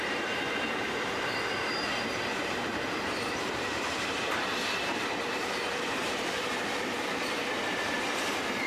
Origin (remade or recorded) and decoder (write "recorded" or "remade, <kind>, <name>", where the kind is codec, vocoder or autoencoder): remade, vocoder, BigVGAN v2